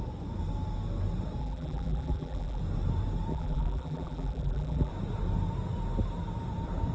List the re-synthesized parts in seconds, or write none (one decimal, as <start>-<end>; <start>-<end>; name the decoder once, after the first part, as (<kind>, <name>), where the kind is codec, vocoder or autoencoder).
1.4-2.6 (vocoder, BigVGAN v2); 3.3-4.9